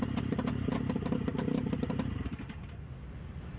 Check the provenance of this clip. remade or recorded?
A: recorded